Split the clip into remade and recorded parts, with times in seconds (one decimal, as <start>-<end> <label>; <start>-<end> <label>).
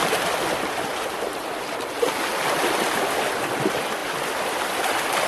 0.0-5.3 remade